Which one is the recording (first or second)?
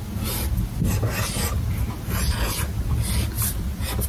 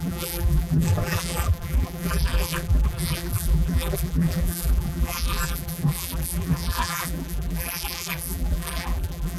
first